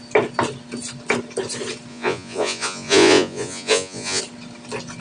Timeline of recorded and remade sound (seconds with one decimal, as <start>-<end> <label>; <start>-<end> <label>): 0.0-1.9 recorded; 1.9-4.2 remade; 4.2-5.0 recorded